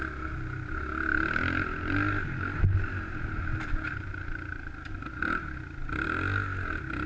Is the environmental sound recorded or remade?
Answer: recorded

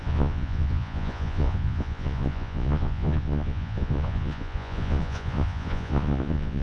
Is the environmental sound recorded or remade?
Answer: remade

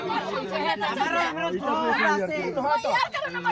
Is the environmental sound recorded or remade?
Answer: recorded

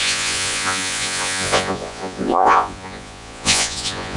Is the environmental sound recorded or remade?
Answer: remade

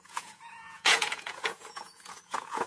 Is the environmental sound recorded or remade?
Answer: remade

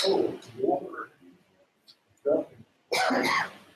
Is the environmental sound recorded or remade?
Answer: recorded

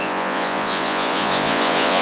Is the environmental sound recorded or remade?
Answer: remade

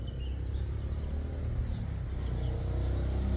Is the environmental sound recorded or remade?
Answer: recorded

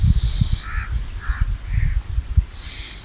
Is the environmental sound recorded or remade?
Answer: recorded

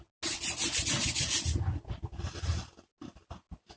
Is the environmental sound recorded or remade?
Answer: recorded